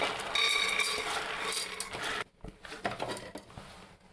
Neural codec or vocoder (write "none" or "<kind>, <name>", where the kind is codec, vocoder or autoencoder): none